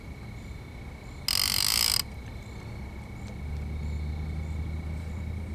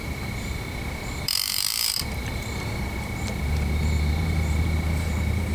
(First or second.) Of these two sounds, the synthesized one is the second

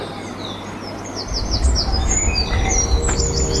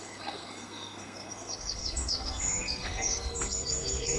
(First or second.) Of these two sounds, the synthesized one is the second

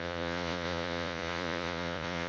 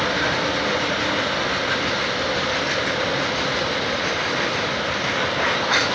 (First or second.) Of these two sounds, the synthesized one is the first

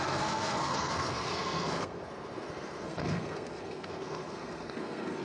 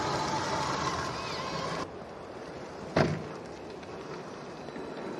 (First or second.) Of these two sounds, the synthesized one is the first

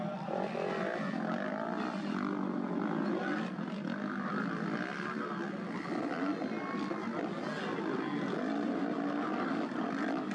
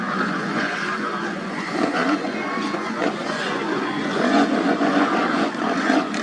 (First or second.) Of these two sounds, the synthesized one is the second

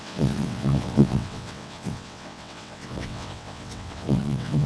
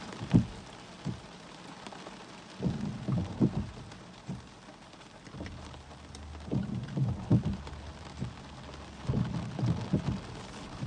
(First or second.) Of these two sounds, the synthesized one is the first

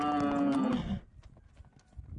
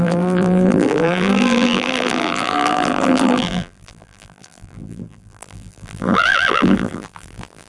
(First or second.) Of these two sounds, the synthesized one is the second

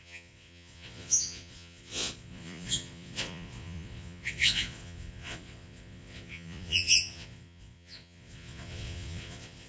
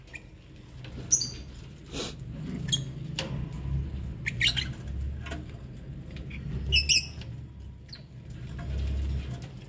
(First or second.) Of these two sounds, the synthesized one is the first